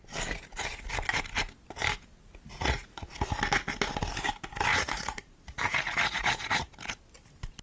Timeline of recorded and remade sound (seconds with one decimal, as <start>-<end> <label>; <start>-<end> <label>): 0.0-2.5 recorded; 2.5-3.1 remade; 3.1-4.7 recorded; 4.7-6.7 remade; 6.7-7.6 recorded